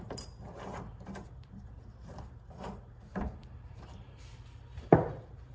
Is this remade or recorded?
remade